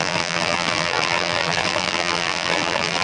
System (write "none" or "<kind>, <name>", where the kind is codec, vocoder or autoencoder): vocoder, BigVGAN v2